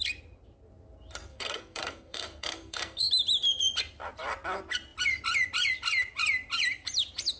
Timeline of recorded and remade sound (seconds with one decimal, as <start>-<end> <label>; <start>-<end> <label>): 0.0-1.3 recorded; 1.3-3.1 remade; 3.1-7.4 recorded